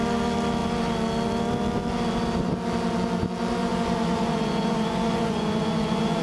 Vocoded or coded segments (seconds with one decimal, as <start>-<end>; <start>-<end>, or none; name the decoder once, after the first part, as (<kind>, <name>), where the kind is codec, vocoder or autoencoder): 3.6-6.2 (vocoder, Vocos)